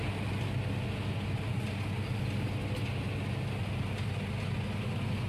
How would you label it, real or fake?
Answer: real